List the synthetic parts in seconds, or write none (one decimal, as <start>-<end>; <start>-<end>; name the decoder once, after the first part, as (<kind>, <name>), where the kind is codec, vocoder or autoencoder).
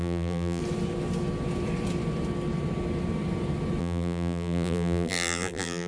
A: 0.0-0.6 (vocoder, BigVGAN v2); 3.8-5.9